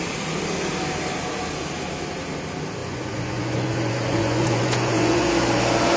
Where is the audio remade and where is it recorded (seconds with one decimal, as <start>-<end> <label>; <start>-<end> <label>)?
0.0-2.8 recorded; 2.8-5.3 remade; 5.3-6.0 recorded